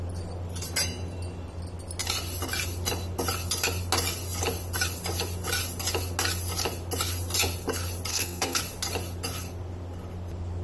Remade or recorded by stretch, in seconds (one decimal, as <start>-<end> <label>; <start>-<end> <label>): 0.0-8.1 recorded; 8.1-8.6 remade; 8.6-10.6 recorded